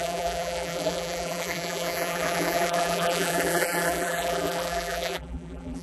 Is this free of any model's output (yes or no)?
no